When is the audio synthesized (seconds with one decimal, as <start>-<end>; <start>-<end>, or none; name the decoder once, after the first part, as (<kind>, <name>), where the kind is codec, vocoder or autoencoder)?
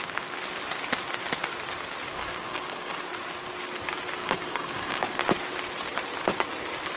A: 2.1-3.0 (codec, DAC); 4.2-5.2